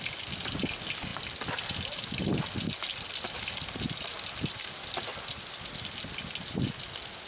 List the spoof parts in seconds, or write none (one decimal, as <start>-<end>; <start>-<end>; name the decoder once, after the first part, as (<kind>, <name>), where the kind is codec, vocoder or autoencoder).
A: none